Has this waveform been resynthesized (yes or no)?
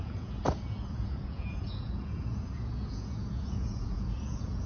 yes